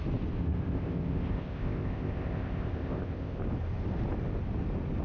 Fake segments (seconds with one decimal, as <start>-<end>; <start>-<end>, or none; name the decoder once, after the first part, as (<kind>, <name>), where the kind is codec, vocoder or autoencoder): 0.4-3.4 (codec, ZipCodec)